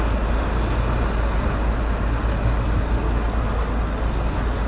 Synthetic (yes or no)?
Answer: no